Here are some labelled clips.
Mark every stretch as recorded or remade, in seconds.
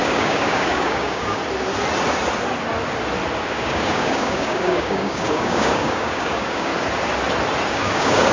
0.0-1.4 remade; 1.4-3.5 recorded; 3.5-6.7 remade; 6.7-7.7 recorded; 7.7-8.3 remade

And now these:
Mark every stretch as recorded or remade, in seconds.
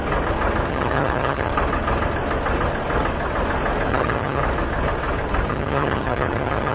0.0-0.7 recorded; 0.7-1.5 remade; 1.5-3.9 recorded; 3.9-4.4 remade; 4.4-5.5 recorded; 5.5-6.7 remade